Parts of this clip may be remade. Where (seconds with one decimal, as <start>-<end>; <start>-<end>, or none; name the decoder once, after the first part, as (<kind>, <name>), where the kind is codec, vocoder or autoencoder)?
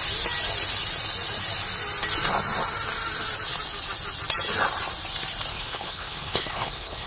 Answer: 5.5-7.1 (codec, HILCodec)